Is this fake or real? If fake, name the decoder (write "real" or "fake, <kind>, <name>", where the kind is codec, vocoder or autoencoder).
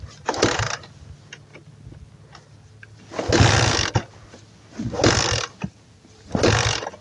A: real